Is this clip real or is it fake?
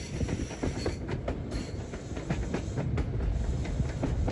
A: real